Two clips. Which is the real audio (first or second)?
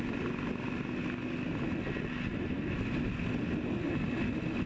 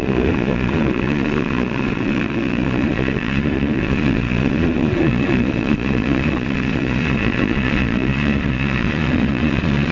first